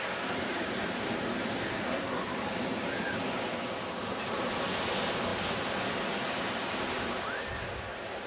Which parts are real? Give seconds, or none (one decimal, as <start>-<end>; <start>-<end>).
0.0-1.7; 2.2-8.3